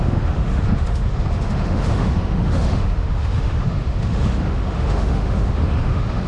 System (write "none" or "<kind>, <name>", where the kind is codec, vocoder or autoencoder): autoencoder, DAC-VAE